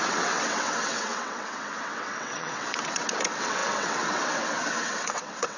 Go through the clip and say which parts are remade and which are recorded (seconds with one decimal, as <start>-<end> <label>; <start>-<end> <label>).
0.0-5.6 remade